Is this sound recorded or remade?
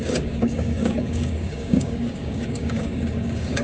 remade